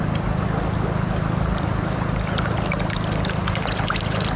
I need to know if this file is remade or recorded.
recorded